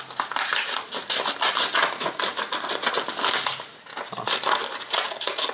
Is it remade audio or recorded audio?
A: recorded